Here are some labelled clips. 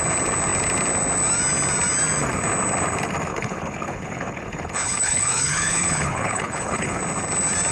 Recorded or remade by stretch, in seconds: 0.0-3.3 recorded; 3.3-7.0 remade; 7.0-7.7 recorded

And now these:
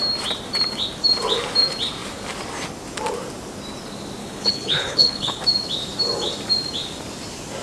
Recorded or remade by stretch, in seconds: 0.0-4.2 recorded; 4.2-5.4 remade; 5.4-7.6 recorded

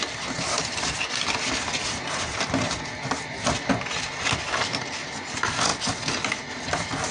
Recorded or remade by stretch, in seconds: 0.0-7.1 recorded

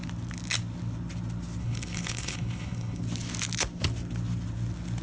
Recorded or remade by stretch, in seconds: 0.0-1.6 recorded; 1.6-3.0 remade; 3.0-5.0 recorded

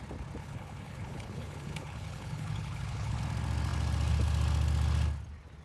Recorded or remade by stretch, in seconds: 0.0-0.4 recorded; 0.4-3.2 remade; 3.2-5.6 recorded

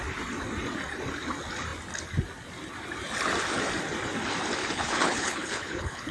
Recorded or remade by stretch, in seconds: 0.0-4.6 recorded; 4.6-6.1 remade

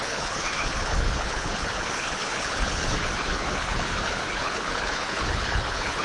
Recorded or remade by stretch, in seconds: 0.0-6.0 remade